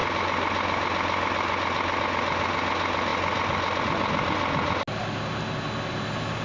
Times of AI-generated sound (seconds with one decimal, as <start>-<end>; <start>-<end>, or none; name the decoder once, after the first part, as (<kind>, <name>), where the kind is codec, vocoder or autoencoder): none